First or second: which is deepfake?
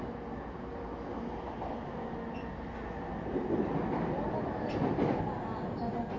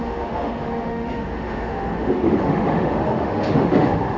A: second